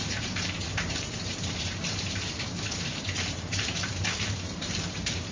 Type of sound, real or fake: fake